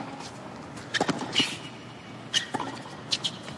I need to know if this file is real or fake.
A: real